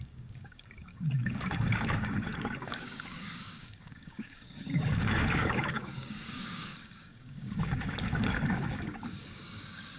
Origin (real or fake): fake